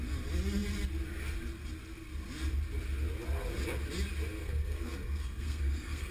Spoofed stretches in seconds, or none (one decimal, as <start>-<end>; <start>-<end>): 4.4-6.1